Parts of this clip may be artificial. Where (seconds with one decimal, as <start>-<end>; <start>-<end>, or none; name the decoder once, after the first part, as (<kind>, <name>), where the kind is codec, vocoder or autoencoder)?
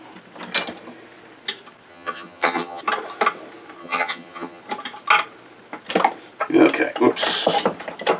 1.9-2.8 (vocoder, HiFi-GAN); 3.8-4.6